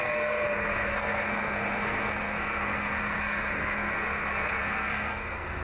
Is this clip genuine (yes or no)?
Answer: no